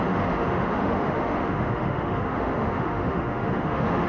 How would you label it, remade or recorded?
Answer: remade